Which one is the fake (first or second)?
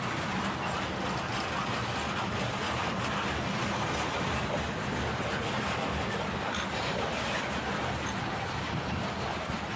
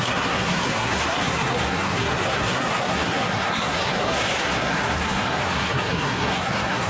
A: second